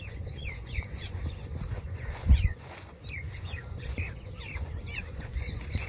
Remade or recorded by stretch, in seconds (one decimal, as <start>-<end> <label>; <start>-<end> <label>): 0.0-5.9 remade